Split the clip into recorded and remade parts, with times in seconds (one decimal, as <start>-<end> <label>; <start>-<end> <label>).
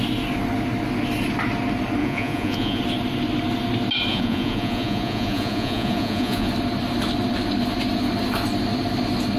0.0-2.0 recorded; 2.0-2.8 remade; 2.8-4.1 recorded; 4.1-6.5 remade; 6.5-9.4 recorded